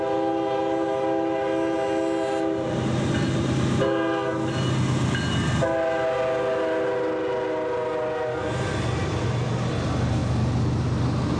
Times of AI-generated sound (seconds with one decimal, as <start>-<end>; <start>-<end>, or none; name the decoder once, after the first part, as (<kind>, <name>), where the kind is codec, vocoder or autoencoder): none